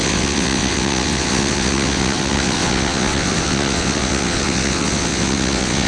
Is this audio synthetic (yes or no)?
yes